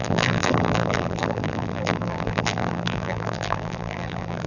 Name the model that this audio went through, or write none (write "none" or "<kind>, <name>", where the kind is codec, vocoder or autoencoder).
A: vocoder, BigVGAN v2